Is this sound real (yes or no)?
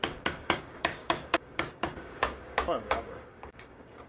no